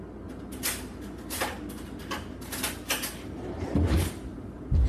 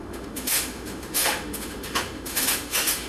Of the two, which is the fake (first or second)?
second